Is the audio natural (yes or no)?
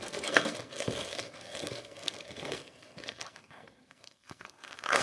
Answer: no